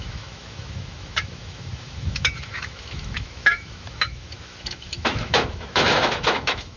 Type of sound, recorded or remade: remade